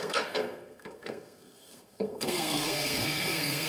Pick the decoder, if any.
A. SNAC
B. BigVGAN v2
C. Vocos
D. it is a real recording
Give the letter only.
A